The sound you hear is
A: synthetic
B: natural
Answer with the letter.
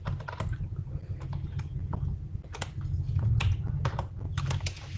B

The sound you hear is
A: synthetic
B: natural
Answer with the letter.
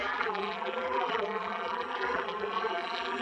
A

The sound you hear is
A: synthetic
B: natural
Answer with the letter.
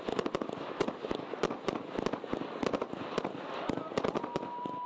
B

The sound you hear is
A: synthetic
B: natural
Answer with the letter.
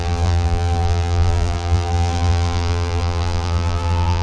A